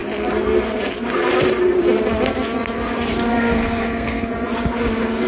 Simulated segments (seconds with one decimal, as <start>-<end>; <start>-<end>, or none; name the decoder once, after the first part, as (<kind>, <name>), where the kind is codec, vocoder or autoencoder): 3.3-4.3 (codec, SNAC)